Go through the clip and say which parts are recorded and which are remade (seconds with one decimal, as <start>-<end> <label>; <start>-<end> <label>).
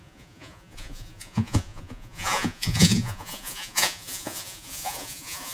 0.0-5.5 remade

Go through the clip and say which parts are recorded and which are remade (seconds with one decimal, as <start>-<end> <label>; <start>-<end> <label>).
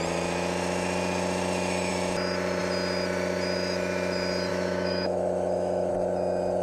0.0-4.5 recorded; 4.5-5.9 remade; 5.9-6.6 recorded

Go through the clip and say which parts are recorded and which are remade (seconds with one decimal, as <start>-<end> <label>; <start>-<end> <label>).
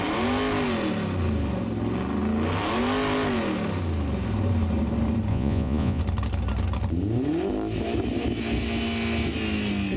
0.0-5.3 recorded; 5.3-6.0 remade; 6.0-10.0 recorded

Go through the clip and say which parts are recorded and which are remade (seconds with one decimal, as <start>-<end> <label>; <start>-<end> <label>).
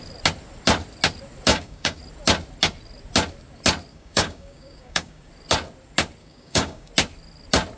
0.0-1.5 recorded; 1.5-2.0 remade; 2.0-3.9 recorded; 3.9-5.3 remade; 5.3-6.2 recorded; 6.2-6.9 remade; 6.9-7.8 recorded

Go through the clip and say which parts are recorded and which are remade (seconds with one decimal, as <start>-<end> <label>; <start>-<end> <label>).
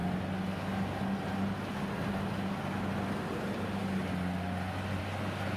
0.0-5.6 recorded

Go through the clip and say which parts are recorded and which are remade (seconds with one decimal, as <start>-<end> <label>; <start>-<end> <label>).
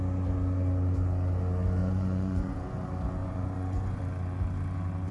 0.0-1.8 recorded; 1.8-2.8 remade; 2.8-3.2 recorded; 3.2-4.0 remade; 4.0-5.1 recorded